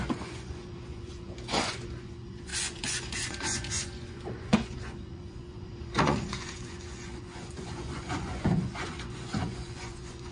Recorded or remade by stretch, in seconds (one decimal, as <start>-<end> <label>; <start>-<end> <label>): 0.0-10.3 remade